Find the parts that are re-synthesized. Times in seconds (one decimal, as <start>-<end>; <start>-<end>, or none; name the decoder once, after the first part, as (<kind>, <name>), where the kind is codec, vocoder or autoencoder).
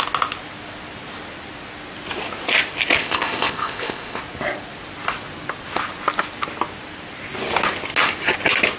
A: 3.0-4.2 (codec, ZipCodec)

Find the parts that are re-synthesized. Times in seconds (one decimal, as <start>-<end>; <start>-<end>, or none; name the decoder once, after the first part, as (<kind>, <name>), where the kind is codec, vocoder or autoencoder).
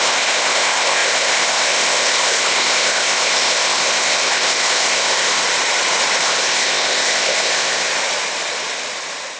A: 0.0-5.4 (codec, ZipCodec); 6.2-7.9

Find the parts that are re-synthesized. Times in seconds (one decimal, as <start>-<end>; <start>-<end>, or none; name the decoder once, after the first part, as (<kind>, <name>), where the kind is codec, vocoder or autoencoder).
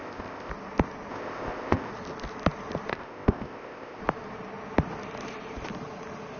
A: 0.0-0.5 (codec, ZipCodec); 1.1-1.9; 2.9-4.0